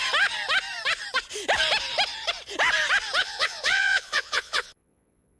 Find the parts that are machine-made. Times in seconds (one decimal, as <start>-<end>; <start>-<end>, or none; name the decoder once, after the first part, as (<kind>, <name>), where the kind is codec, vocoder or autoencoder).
3.2-5.4 (vocoder, Vocos)

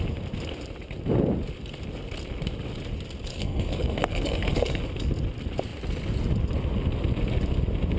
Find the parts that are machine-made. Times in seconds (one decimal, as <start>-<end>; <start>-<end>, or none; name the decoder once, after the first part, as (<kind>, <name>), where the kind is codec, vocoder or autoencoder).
3.3-4.8 (codec, SNAC)

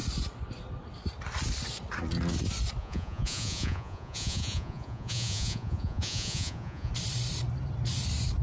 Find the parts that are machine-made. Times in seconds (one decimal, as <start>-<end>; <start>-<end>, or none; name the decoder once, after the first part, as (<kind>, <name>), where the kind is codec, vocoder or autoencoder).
2.8-6.9 (vocoder, Vocos)